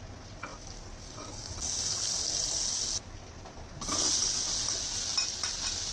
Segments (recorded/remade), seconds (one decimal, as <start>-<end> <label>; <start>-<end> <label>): 0.0-5.9 recorded